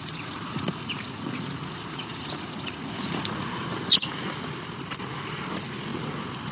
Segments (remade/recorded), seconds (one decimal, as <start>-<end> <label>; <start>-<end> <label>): 0.0-3.9 remade; 3.9-6.5 recorded